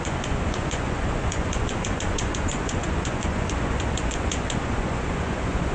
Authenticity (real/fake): fake